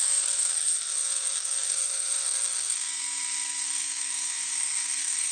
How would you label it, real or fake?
fake